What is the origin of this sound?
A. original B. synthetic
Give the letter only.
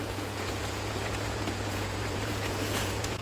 B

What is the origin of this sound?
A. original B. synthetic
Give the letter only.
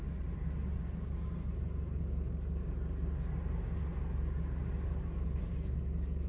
A